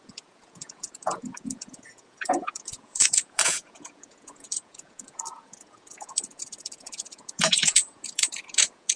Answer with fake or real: fake